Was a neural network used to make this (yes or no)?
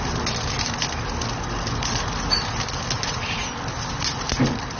no